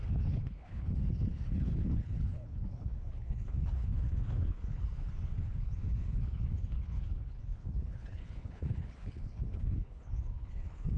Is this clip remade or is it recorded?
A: remade